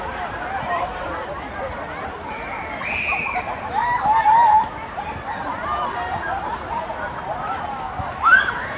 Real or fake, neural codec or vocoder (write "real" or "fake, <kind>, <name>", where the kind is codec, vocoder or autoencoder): real